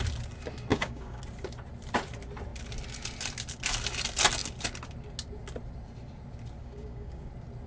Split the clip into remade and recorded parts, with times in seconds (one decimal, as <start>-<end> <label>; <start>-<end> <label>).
0.0-0.7 recorded; 0.7-1.2 remade; 1.2-6.6 recorded; 6.6-7.3 remade; 7.3-7.7 recorded